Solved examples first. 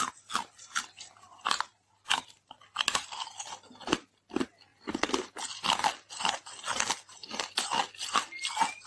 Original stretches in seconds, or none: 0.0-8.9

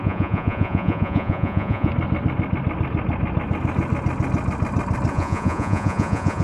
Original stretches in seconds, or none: 1.9-5.1

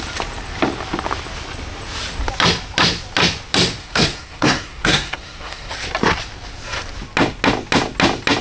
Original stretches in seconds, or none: 0.0-3.8; 5.7-8.4